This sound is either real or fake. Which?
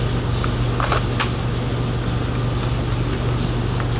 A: real